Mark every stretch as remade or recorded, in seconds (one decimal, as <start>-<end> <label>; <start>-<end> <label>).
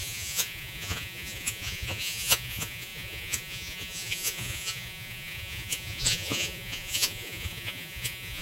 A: 0.0-8.4 remade